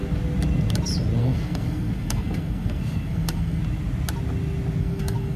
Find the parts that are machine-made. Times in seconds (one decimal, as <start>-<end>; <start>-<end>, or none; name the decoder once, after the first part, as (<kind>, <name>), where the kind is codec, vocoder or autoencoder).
1.2-3.6 (codec, SNAC); 4.8-5.4